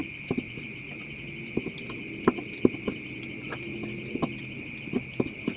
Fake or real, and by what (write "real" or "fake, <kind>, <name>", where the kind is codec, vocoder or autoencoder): real